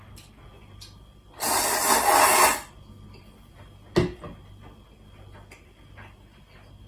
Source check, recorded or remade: recorded